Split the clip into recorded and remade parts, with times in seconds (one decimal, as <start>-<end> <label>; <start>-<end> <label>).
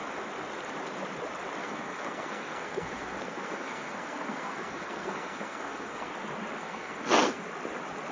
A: 0.0-1.6 recorded; 1.6-6.1 remade; 6.1-6.6 recorded; 6.6-7.4 remade; 7.4-8.1 recorded